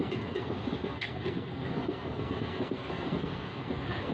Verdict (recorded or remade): remade